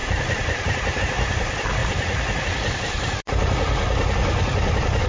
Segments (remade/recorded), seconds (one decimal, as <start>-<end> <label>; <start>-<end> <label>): 0.0-1.0 remade; 1.0-5.1 recorded